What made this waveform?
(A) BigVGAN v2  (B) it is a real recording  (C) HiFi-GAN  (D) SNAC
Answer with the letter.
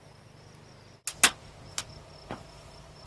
B